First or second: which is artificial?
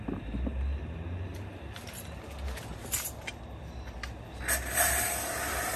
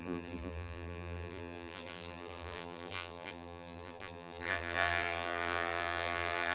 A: second